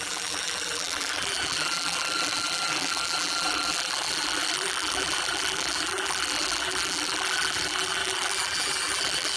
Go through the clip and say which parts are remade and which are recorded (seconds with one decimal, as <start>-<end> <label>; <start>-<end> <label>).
0.0-9.4 remade